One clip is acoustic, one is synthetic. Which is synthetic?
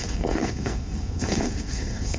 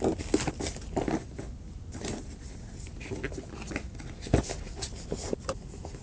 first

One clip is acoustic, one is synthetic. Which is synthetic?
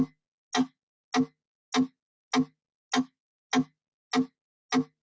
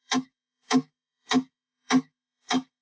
second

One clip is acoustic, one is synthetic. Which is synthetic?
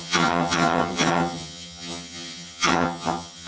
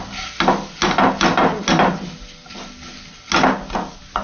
first